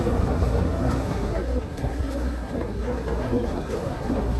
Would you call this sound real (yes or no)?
no